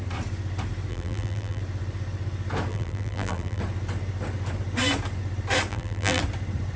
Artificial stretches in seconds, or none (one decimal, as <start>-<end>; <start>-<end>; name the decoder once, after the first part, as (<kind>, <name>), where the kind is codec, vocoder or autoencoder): 0.9-1.6 (vocoder, BigVGAN v2); 2.7-3.6; 5.7-6.2